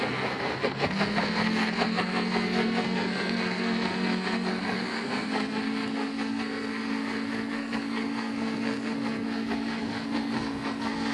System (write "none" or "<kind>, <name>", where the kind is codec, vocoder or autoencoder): codec, SNAC